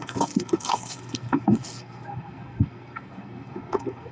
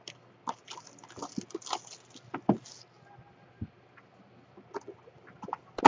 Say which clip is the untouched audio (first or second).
second